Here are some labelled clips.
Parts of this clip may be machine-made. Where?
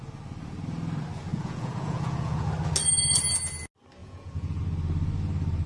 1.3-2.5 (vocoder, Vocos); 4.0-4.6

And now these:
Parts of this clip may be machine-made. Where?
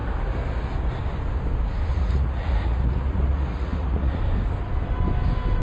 1.9-4.2 (vocoder, Vocos)